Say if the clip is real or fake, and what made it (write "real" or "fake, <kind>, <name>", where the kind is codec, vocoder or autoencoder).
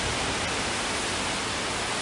real